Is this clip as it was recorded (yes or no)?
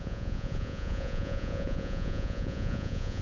no